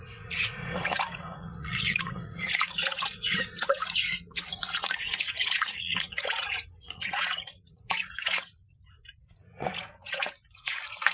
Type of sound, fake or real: fake